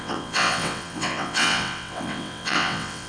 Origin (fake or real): fake